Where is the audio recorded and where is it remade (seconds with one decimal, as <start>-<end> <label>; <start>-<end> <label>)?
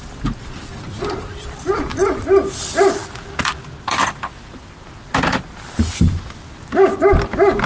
0.0-7.7 recorded